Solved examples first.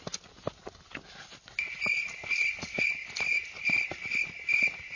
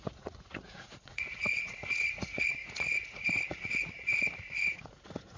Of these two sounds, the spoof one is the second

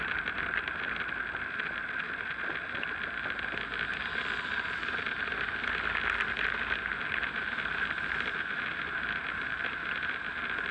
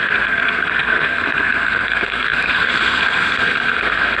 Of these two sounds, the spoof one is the second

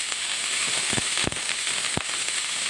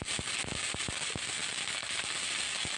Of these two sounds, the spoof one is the first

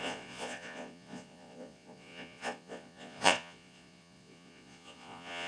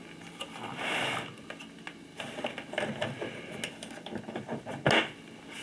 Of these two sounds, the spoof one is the first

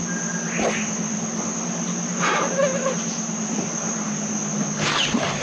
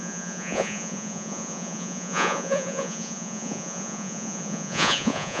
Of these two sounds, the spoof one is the second